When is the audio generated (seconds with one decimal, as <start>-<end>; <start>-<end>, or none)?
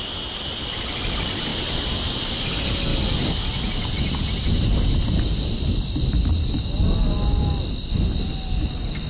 none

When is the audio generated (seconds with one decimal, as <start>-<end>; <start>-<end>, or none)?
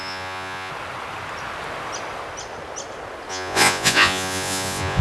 0.0-0.7; 3.3-5.0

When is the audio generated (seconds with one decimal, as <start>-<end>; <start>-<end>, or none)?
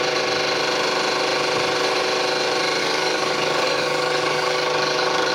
2.8-5.3